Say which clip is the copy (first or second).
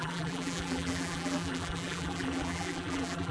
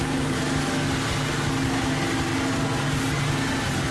first